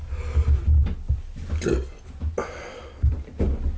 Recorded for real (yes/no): yes